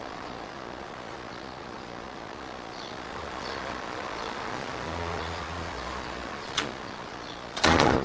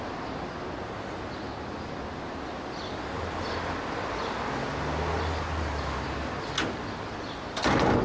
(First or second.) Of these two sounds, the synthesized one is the first